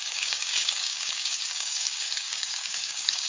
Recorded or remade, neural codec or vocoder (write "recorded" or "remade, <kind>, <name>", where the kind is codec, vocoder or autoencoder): remade, codec, DAC